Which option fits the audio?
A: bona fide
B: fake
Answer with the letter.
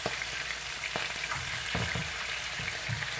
A